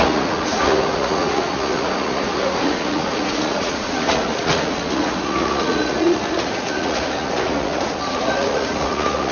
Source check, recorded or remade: remade